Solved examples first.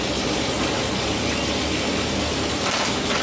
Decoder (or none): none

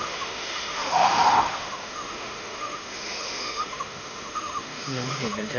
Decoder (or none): autoencoder, DAC-VAE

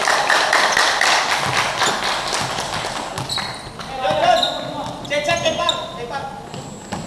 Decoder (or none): none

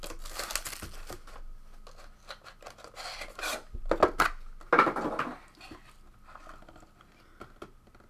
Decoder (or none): none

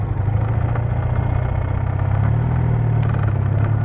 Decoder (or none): none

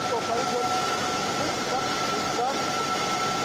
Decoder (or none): none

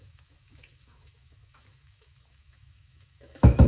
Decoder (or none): autoencoder, DAC-VAE